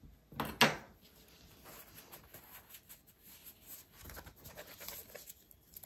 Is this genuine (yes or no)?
yes